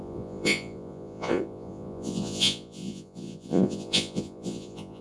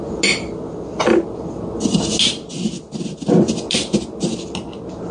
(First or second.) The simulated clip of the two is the first